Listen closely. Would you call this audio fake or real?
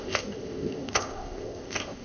fake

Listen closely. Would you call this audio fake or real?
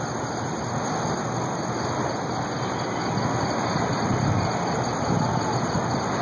real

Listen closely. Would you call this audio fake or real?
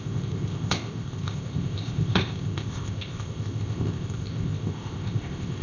fake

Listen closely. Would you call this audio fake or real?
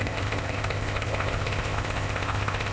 fake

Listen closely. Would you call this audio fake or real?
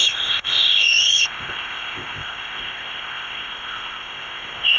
fake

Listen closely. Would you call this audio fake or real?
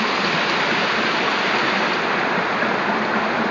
real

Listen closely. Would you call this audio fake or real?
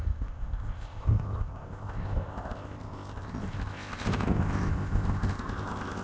fake